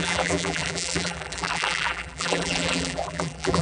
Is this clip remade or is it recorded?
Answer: remade